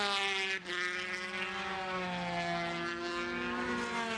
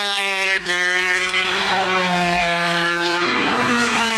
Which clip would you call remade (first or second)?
second